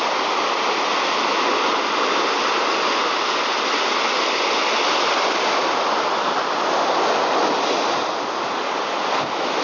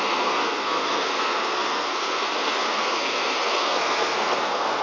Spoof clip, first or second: second